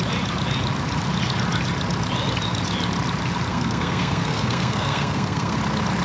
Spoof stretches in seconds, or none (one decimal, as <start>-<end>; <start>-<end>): 3.5-5.6